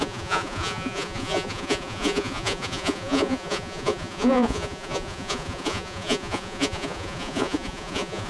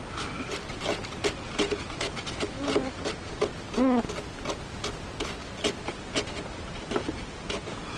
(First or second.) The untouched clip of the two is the second